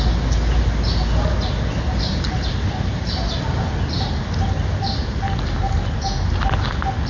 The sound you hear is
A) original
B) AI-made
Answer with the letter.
A